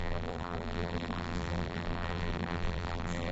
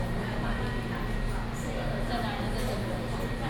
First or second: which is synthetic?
first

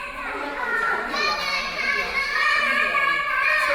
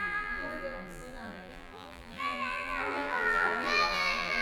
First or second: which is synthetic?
second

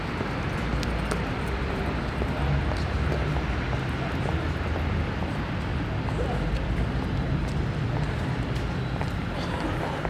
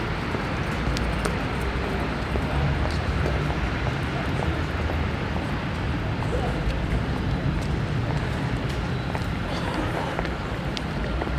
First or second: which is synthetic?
second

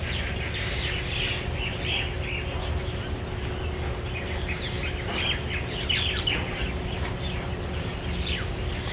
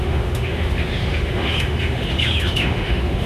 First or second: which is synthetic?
second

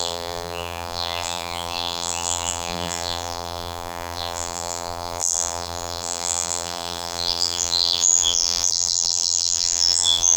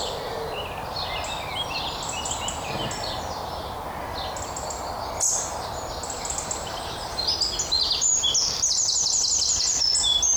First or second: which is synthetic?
first